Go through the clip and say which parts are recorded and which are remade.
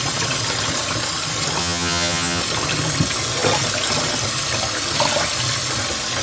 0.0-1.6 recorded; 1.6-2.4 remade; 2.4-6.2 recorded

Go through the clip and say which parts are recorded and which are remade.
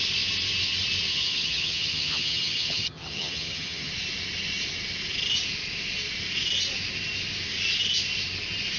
0.0-1.1 recorded; 1.1-3.9 remade; 3.9-8.8 recorded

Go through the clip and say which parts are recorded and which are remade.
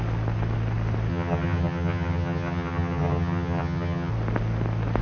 0.0-1.1 recorded; 1.1-4.1 remade; 4.1-5.0 recorded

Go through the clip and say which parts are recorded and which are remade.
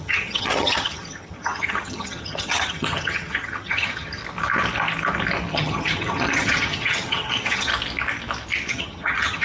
0.0-4.2 remade; 4.2-5.5 recorded; 5.5-7.7 remade; 7.7-8.7 recorded; 8.7-9.4 remade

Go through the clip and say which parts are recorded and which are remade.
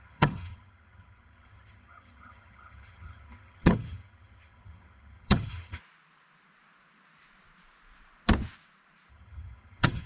0.0-5.8 remade; 5.8-9.1 recorded; 9.1-10.1 remade